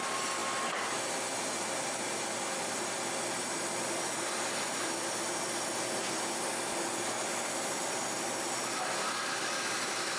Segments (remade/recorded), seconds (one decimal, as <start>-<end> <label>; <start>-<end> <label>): 0.0-10.2 recorded